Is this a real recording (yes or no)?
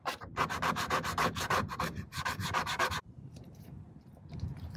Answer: no